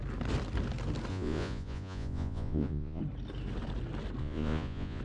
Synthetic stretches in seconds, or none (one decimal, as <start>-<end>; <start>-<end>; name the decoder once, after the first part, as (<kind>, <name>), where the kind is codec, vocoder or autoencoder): 1.1-3.0 (vocoder, Vocos); 4.2-5.0